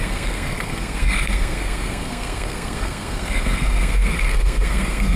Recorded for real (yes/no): no